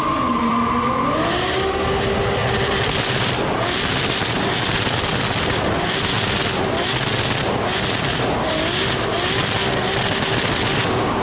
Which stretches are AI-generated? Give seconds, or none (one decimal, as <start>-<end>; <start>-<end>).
none